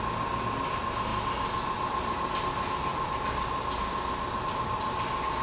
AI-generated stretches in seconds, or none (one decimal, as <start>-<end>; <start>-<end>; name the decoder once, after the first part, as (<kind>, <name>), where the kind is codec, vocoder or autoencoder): none